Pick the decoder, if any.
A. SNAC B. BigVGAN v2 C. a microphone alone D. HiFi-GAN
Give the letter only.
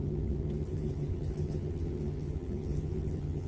D